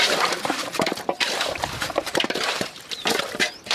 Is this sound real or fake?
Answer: fake